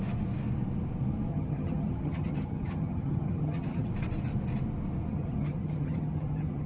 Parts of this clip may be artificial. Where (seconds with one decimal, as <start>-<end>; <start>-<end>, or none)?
1.3-3.9; 5.1-6.7